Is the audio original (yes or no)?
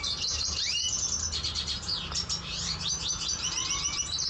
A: no